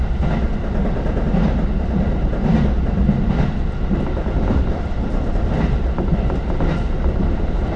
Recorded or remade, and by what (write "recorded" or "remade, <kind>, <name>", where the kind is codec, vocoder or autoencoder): recorded